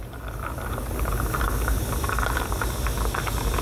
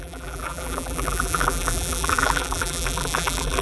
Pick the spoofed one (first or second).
second